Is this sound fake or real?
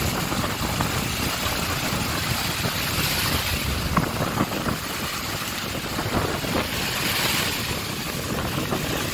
real